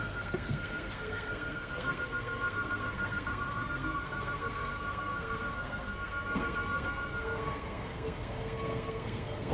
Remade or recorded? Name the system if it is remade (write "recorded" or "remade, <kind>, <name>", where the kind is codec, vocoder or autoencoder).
remade, codec, SNAC